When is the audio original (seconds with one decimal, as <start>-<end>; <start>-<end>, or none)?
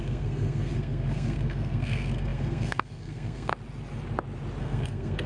3.5-4.6